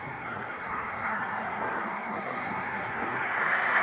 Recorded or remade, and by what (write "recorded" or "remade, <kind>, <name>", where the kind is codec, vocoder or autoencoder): remade, codec, SNAC